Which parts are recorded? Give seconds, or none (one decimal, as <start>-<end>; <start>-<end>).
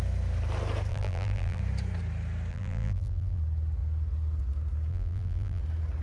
0.0-0.9; 1.6-2.5; 3.4-4.9; 5.6-6.0